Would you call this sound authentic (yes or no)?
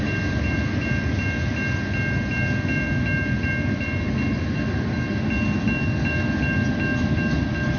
yes